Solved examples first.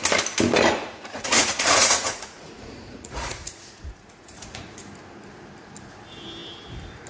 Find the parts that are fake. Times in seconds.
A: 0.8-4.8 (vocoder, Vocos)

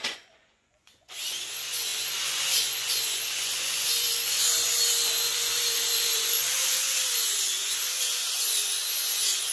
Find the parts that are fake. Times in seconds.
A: 0.0-9.5 (vocoder, Vocos)

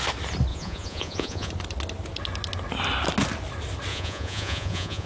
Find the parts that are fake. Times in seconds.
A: 0.5-1.5 (vocoder, Vocos); 3.9-5.1

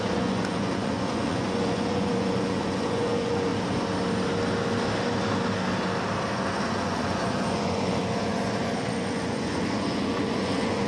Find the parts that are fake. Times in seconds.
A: 0.0-3.5 (vocoder, Vocos); 6.3-10.9